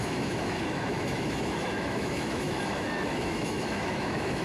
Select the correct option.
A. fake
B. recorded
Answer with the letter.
A